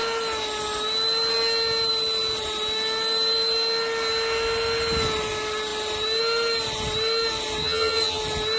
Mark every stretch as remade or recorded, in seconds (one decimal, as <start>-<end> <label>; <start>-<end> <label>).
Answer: 0.0-7.6 recorded; 7.6-8.2 remade; 8.2-8.6 recorded